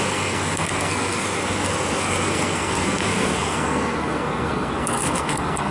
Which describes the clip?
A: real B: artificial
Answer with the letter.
B